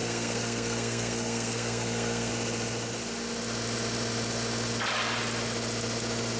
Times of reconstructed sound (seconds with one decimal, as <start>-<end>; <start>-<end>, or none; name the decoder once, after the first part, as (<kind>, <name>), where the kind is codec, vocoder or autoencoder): 0.0-2.3 (codec, SNAC)